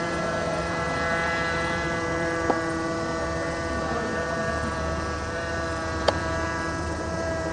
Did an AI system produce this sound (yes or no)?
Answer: yes